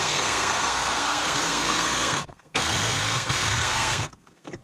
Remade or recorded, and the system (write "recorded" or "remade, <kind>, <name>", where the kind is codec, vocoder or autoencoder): remade, codec, SNAC